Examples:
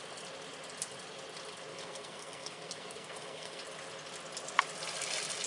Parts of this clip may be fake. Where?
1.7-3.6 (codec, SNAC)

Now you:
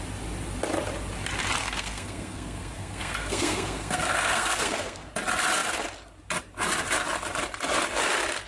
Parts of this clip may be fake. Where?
1.6-5.1 (codec, SNAC)